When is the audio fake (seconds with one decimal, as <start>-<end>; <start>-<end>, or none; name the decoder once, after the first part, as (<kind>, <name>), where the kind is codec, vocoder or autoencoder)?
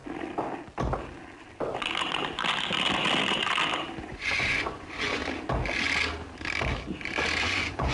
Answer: 4.0-5.2 (vocoder, Vocos); 7.4-7.9